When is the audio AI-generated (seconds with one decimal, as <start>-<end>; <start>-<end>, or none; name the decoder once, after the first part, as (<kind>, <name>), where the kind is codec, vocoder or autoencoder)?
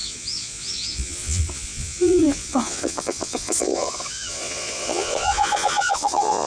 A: 0.0-6.5 (vocoder, Vocos)